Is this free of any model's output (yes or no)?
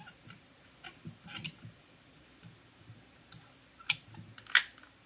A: yes